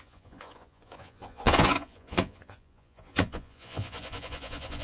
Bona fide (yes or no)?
no